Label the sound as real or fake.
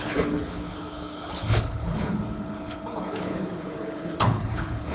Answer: fake